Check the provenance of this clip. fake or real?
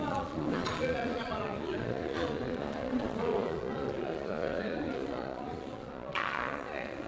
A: fake